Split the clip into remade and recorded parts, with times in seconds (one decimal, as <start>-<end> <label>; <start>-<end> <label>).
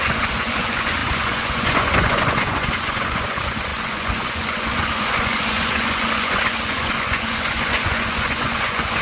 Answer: 0.0-9.0 remade